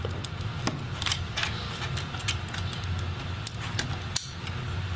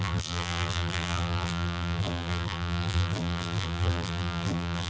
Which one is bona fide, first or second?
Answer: first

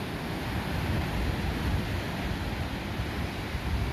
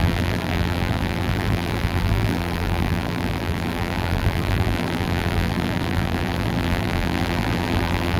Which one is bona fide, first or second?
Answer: first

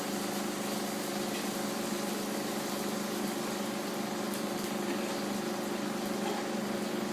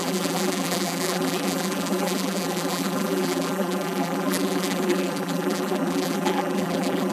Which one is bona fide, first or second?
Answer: first